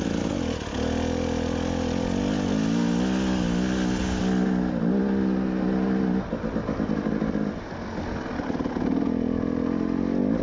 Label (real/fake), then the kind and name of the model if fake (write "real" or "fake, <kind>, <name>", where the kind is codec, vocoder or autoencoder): real